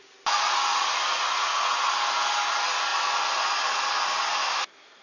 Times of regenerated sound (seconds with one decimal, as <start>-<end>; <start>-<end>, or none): 0.7-2.0